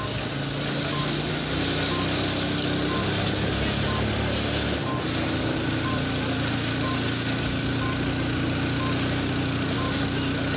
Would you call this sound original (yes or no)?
yes